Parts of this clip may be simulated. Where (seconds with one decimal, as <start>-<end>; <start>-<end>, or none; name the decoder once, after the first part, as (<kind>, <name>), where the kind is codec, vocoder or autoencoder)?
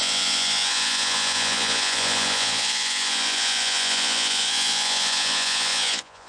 0.0-6.3 (vocoder, Vocos)